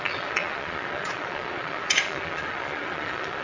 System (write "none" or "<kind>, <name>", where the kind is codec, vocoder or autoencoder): vocoder, Vocos